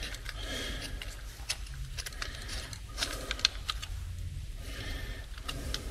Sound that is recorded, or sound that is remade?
recorded